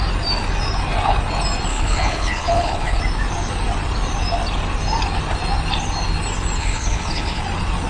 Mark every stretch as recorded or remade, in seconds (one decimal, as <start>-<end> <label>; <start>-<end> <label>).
0.0-1.7 recorded; 1.7-3.0 remade; 3.0-6.6 recorded; 6.6-7.4 remade; 7.4-7.9 recorded